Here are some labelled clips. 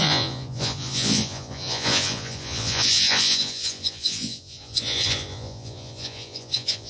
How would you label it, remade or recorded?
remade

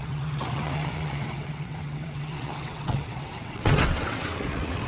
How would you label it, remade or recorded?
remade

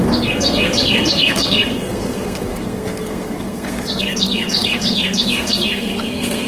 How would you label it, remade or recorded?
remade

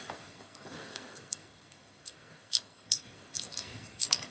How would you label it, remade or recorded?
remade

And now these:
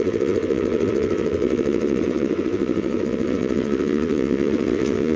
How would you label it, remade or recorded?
remade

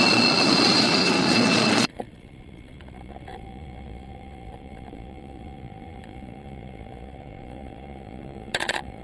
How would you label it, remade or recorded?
remade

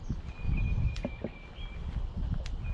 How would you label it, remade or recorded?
recorded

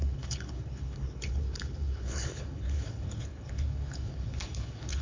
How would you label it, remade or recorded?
remade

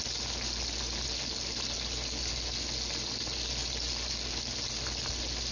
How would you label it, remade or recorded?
recorded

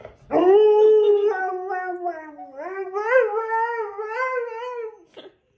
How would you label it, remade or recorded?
recorded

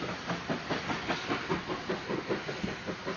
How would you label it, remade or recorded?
recorded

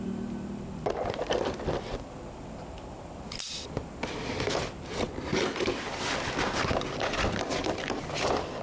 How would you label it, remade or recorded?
remade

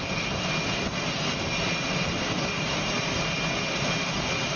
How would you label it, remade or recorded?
recorded